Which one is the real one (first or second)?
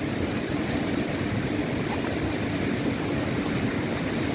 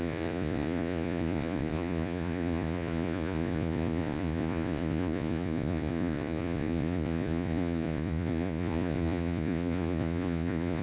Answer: first